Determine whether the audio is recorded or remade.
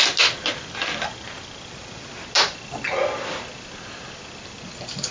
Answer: recorded